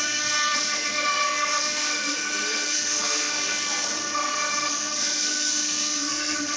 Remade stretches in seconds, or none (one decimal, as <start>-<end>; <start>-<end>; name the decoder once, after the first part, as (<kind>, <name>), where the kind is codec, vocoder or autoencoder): 0.0-6.6 (codec, SNAC)